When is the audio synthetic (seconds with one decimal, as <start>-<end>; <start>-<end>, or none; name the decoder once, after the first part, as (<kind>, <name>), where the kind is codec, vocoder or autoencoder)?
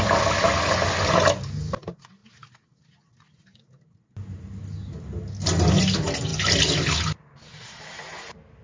none